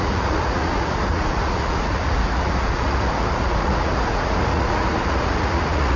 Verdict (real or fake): fake